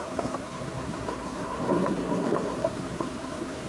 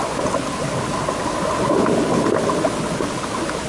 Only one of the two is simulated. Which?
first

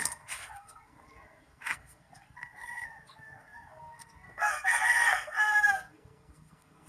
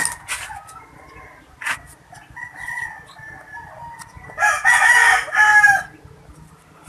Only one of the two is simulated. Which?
first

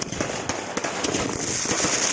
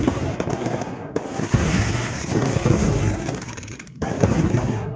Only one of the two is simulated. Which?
second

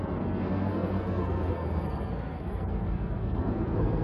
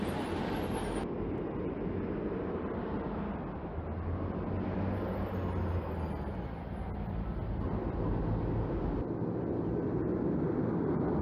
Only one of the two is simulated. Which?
first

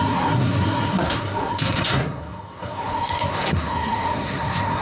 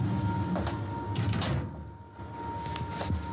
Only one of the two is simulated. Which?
first